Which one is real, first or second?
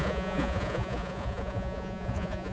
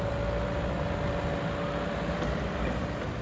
second